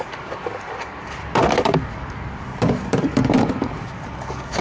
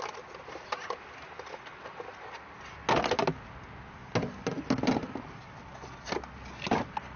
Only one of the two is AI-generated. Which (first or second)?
first